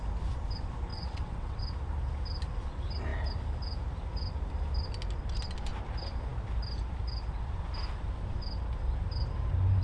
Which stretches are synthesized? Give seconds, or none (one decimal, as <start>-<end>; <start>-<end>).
0.9-1.6